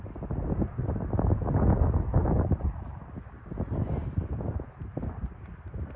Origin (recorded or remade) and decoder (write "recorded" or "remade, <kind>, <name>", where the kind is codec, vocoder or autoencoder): recorded